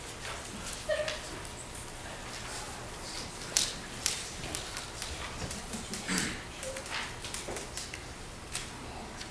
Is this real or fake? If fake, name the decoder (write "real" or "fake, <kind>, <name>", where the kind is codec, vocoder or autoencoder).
real